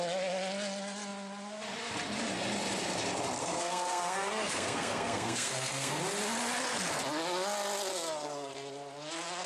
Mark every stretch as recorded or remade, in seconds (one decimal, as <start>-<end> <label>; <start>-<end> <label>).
0.0-3.4 recorded; 3.4-6.0 remade; 6.0-7.9 recorded; 7.9-8.5 remade; 8.5-9.5 recorded